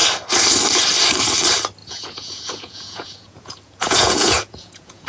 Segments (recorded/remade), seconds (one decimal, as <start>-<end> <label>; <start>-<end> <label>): 0.0-1.8 recorded; 1.8-5.1 remade